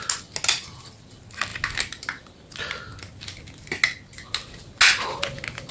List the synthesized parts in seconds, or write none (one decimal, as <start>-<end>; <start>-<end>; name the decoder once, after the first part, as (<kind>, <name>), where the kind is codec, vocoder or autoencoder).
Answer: none